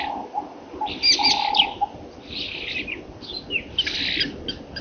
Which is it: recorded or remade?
recorded